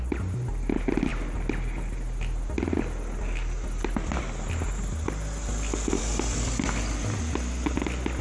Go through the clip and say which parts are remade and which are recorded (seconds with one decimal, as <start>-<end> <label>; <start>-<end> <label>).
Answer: 0.0-8.2 recorded